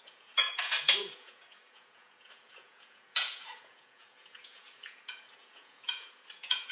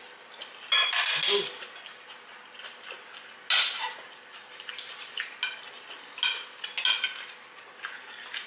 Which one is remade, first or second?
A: first